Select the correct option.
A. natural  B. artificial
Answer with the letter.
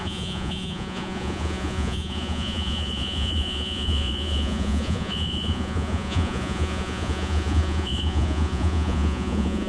B